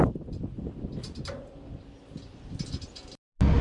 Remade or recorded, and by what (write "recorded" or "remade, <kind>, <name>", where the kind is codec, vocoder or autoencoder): recorded